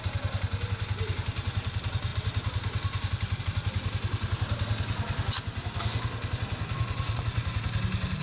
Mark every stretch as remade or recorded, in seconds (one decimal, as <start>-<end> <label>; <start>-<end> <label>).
0.0-8.2 recorded